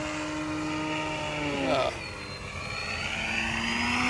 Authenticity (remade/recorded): recorded